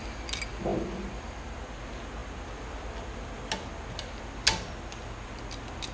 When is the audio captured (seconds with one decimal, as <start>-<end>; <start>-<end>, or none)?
0.0-5.9